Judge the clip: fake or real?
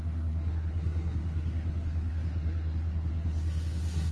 fake